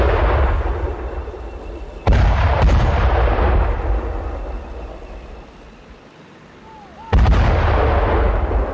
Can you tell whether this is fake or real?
real